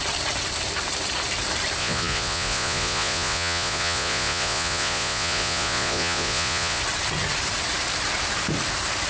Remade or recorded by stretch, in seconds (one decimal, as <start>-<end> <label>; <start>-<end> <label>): 0.0-1.8 recorded; 1.8-6.8 remade; 6.8-9.1 recorded